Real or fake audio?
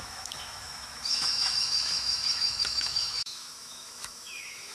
fake